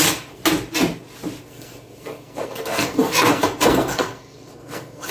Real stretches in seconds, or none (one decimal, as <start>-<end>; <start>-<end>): 0.4-1.4